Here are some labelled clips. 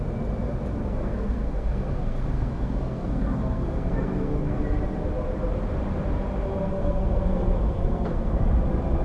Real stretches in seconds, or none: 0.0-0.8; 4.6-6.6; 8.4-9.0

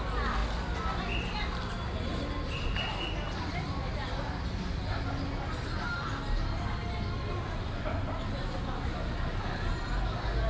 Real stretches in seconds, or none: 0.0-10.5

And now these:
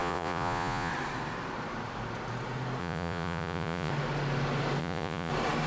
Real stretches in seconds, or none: 0.9-2.8; 3.9-4.8; 5.3-5.7

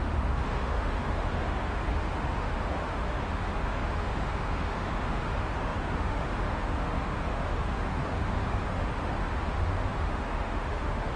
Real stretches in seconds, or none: none

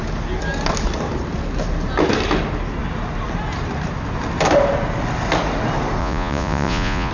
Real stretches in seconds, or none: 0.0-6.0

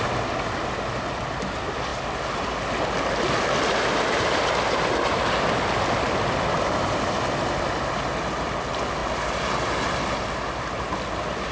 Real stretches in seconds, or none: 0.0-11.5

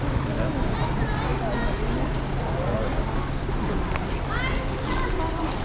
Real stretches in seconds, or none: 0.0-5.6

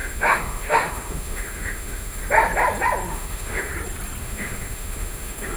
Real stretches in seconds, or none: 2.2-3.1; 3.7-4.2